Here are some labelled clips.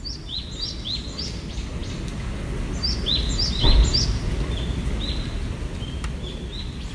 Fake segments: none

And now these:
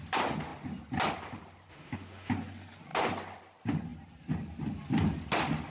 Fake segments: 1.7-2.3 (autoencoder, DAC-VAE)

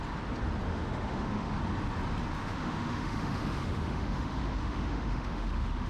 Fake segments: 0.7-1.6 (autoencoder, DAC-VAE); 2.4-5.9

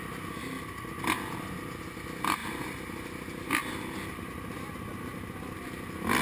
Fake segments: none

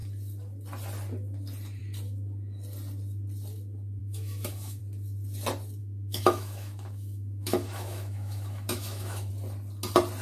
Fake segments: 4.0-4.8 (autoencoder, DAC-VAE); 5.8-9.3

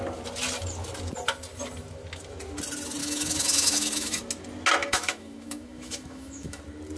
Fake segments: 3.0-4.2 (autoencoder, DAC-VAE); 4.8-6.6

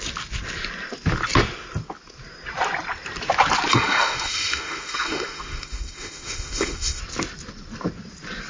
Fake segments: 3.7-7.0 (autoencoder, DAC-VAE)

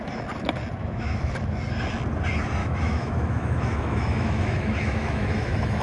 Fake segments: 0.8-1.3 (autoencoder, DAC-VAE); 2.6-5.8